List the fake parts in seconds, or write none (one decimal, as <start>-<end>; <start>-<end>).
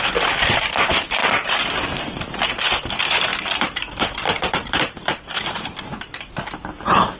1.2-2.0; 3.3-5.8